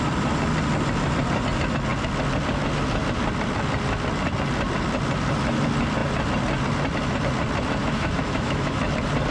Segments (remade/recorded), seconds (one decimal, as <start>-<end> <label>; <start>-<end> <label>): 0.0-7.8 recorded; 7.8-8.8 remade; 8.8-9.3 recorded